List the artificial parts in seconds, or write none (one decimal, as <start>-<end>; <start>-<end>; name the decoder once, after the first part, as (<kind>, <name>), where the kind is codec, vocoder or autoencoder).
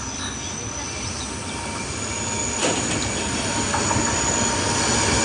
none